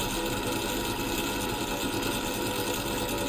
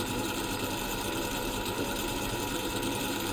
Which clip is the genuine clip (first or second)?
first